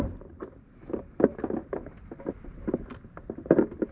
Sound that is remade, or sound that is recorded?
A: recorded